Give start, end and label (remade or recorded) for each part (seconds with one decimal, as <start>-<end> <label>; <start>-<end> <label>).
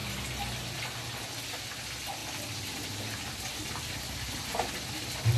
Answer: 0.0-2.2 recorded; 2.2-5.4 remade